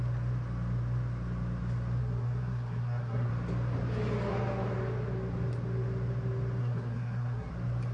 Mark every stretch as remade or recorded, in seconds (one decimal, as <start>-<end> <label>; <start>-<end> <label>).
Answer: 0.0-2.0 recorded; 2.0-3.3 remade; 3.3-6.6 recorded; 6.6-7.5 remade; 7.5-7.9 recorded